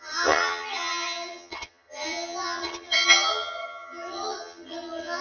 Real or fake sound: fake